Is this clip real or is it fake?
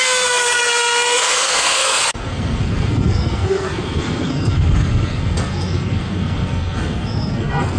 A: fake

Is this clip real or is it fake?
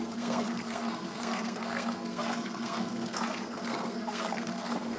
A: fake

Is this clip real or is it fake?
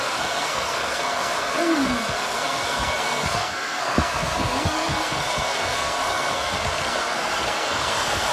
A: fake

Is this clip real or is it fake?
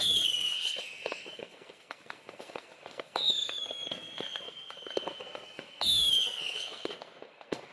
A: fake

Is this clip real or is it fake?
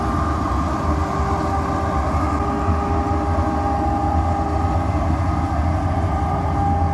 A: real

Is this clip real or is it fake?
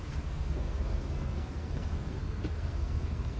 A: fake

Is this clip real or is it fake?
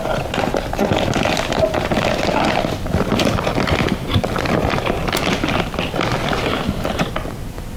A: real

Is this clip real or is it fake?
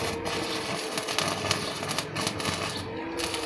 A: real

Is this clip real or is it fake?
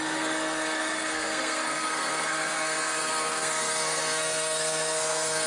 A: fake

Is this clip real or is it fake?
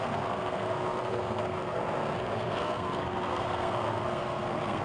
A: fake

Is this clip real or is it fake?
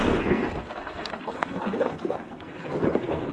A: fake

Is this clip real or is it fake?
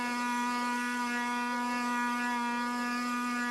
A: real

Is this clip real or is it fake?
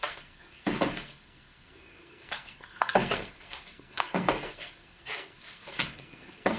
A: fake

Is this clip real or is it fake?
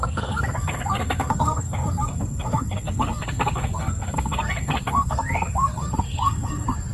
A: fake